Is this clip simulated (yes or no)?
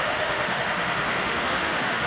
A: yes